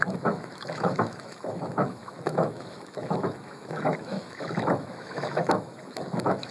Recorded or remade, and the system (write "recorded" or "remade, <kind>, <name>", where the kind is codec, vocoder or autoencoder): remade, autoencoder, DAC-VAE